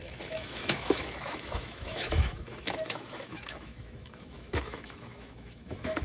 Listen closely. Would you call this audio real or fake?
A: fake